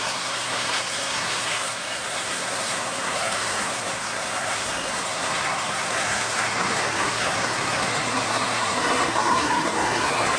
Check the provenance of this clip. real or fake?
fake